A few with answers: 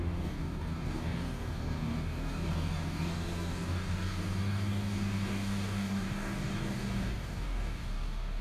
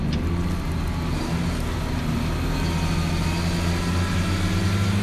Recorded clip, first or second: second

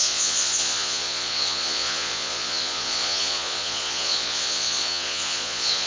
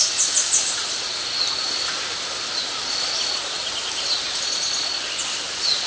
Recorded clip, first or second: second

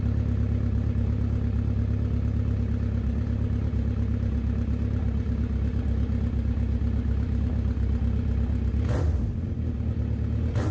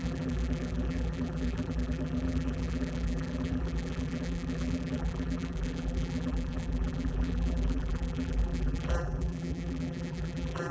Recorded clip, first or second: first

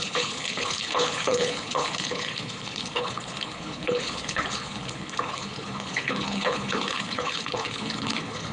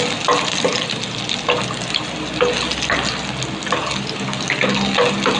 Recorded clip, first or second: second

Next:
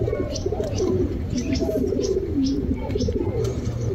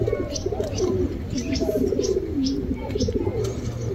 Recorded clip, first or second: second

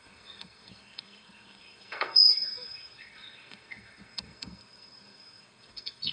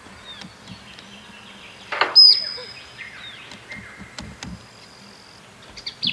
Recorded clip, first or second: second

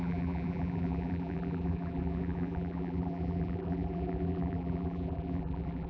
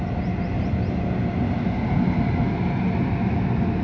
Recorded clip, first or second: second